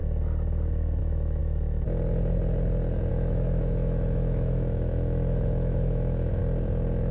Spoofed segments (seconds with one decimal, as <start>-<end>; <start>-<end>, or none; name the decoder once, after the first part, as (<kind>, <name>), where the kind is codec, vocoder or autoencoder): 1.0-1.4 (autoencoder, DAC-VAE); 3.1-6.4